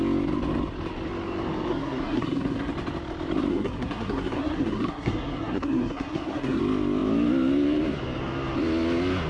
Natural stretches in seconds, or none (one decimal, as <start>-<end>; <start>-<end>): 0.0-1.7; 2.7-3.5; 6.6-9.3